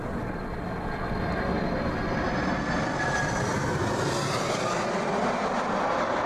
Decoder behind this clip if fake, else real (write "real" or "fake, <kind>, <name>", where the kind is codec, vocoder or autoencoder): real